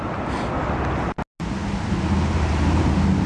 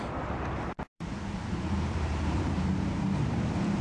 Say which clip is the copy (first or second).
second